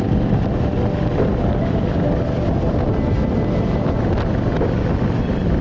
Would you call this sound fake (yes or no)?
no